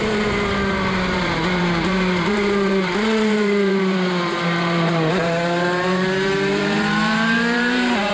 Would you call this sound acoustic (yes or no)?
no